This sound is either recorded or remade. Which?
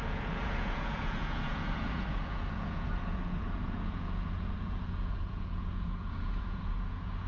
remade